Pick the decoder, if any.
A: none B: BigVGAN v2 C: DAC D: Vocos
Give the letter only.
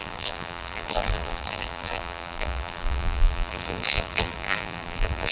B